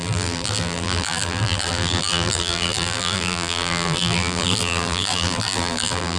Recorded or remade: remade